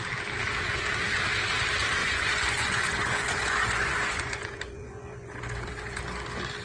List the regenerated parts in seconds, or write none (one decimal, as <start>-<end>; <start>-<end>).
2.0-6.0